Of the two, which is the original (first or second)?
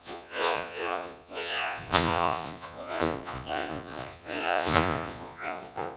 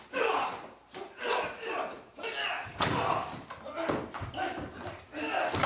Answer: second